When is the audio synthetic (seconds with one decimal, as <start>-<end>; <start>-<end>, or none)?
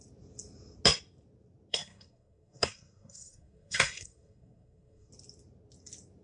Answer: 1.7-5.1